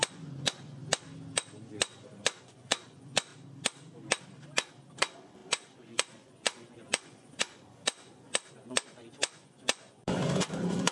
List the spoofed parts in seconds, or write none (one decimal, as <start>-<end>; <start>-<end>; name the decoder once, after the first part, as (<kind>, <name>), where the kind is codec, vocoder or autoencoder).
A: 0.0-0.8 (vocoder, Vocos); 1.7-3.3; 5.0-10.9